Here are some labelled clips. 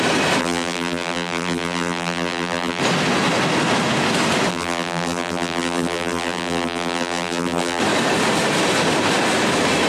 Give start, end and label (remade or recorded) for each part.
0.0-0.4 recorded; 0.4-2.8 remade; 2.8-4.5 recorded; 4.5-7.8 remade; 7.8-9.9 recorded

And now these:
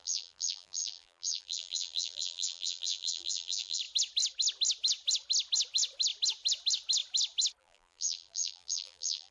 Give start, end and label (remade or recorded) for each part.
0.0-3.8 remade; 3.8-7.6 recorded; 7.6-9.3 remade

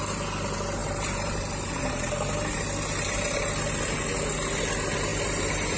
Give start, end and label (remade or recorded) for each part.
0.0-0.8 recorded; 0.8-1.9 remade; 1.9-5.1 recorded; 5.1-5.8 remade

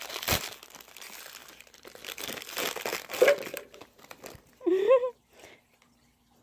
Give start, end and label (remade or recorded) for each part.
0.0-1.4 recorded; 1.4-2.4 remade; 2.4-2.9 recorded; 2.9-4.7 remade; 4.7-6.4 recorded

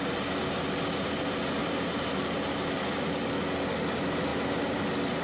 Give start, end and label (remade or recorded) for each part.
0.0-1.6 recorded; 1.6-2.8 remade; 2.8-4.3 recorded; 4.3-4.8 remade; 4.8-5.2 recorded